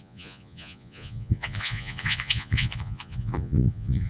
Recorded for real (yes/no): no